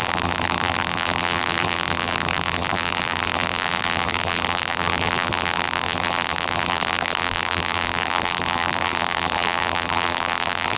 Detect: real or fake fake